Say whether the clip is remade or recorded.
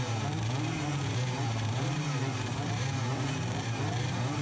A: remade